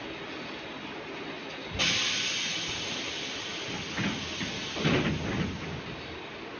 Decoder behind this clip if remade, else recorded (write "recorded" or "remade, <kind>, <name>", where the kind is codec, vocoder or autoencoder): recorded